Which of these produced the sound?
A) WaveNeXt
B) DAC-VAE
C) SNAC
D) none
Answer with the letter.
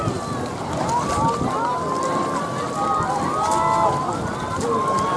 D